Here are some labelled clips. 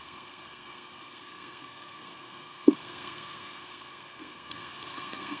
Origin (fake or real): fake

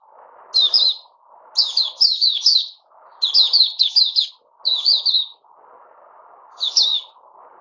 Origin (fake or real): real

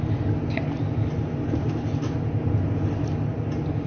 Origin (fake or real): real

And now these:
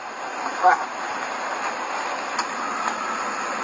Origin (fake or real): real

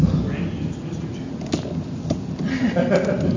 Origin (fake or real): real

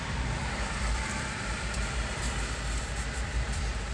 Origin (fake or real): fake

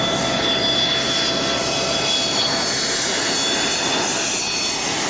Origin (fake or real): real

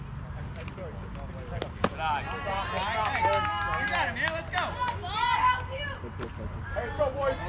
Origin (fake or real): real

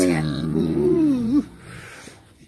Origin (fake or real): fake